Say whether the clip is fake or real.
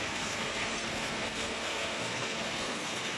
fake